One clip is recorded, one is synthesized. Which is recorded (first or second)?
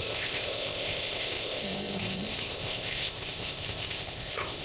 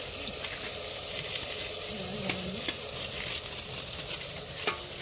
second